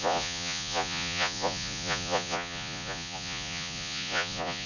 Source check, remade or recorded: remade